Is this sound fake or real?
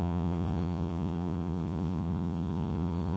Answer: fake